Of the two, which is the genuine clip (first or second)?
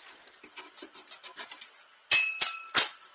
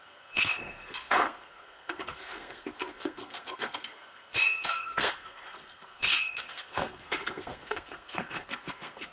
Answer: first